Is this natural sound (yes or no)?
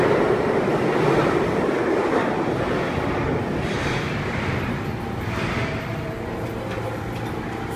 yes